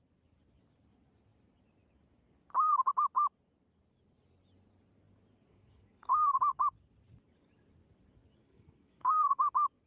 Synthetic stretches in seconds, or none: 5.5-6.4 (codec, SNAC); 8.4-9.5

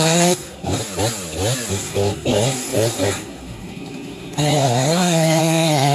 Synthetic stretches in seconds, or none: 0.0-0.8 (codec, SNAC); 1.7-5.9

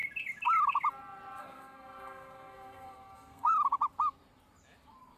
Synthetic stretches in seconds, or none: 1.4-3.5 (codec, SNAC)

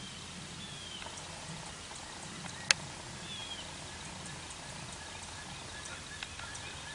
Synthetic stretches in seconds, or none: none

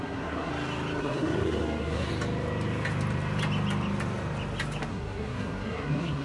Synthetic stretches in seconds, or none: 0.0-0.5 (codec, SNAC); 1.0-2.1; 4.9-6.2

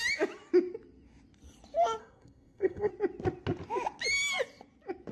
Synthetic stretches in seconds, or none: 2.0-2.9 (codec, SNAC)